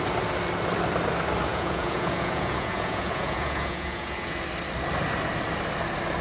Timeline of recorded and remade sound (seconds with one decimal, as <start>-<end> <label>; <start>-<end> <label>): 0.0-1.5 recorded; 1.5-4.4 remade; 4.4-6.2 recorded